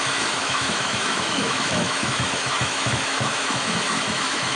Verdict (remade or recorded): remade